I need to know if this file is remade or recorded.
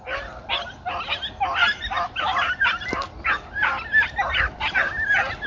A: recorded